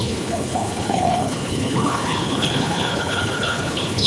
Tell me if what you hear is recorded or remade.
remade